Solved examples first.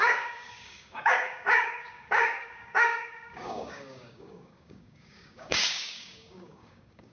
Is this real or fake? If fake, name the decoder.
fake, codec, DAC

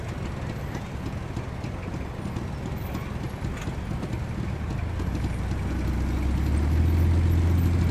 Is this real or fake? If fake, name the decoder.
real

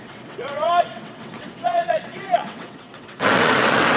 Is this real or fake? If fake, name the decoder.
fake, vocoder, WaveNeXt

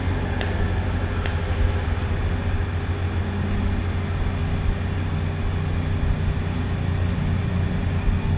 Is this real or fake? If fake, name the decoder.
real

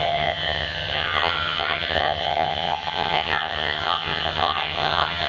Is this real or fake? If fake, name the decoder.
fake, vocoder, HiFi-GAN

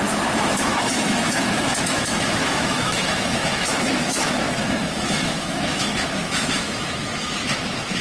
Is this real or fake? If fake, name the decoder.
fake, autoencoder, DAC-VAE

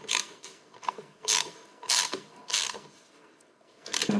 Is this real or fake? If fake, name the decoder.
fake, codec, SNAC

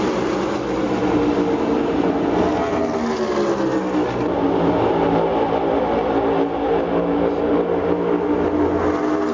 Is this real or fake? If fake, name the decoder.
real